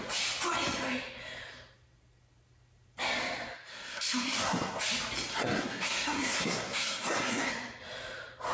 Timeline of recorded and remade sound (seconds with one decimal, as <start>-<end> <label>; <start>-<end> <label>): 0.0-3.7 recorded; 3.7-4.8 remade; 4.8-5.3 recorded; 5.3-7.5 remade; 7.5-8.5 recorded